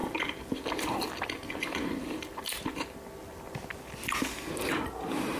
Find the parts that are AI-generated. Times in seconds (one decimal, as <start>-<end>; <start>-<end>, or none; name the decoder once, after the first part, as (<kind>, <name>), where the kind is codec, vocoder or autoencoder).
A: none